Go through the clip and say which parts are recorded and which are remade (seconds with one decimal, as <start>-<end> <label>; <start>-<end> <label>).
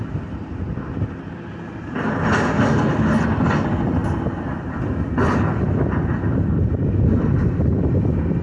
0.0-8.4 recorded